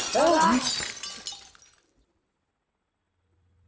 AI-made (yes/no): no